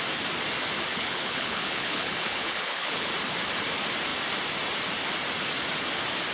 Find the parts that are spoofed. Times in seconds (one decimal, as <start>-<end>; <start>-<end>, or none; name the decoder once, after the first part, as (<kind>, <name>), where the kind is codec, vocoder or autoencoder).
0.9-3.1 (codec, HILCodec)